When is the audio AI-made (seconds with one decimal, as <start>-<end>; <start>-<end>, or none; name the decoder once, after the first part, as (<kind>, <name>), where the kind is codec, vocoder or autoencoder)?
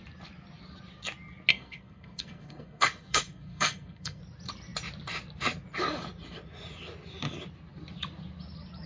1.5-4.2 (codec, SNAC)